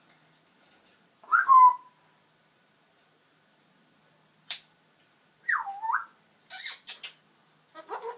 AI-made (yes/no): no